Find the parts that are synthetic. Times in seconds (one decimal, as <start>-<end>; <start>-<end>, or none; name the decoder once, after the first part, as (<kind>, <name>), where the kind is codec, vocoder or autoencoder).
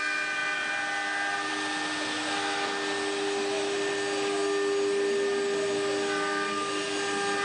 none